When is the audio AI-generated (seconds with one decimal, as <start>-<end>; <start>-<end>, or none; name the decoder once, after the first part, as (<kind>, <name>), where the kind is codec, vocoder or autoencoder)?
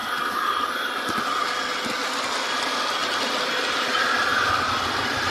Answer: 3.0-3.8 (vocoder, BigVGAN v2); 4.3-5.3